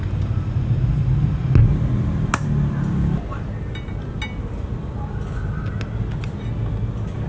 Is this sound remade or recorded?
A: recorded